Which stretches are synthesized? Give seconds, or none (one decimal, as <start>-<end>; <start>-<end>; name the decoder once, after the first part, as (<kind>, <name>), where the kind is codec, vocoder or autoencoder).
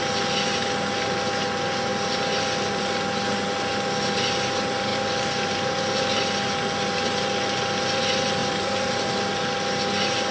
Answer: 8.4-9.1 (vocoder, BigVGAN v2)